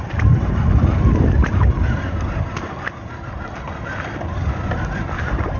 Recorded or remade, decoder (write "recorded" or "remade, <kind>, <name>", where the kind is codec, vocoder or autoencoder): recorded